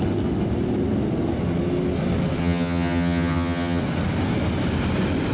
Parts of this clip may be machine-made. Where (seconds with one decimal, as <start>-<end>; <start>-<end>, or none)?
2.4-3.8